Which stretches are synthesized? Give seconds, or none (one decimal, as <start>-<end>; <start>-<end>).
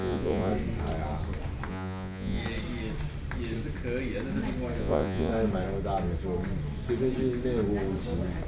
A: 0.0-0.5; 1.7-2.4; 4.8-5.3